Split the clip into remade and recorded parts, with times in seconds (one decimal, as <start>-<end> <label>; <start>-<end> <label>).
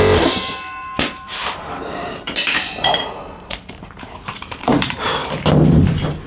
0.0-5.2 remade; 5.2-6.3 recorded